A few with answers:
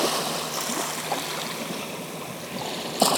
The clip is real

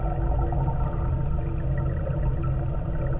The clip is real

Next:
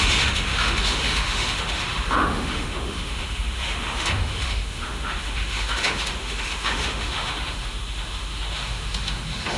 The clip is fake